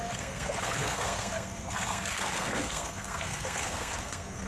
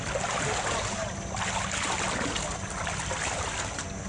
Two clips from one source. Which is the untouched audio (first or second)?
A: second